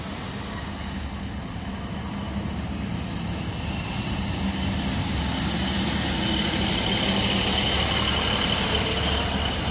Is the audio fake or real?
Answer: real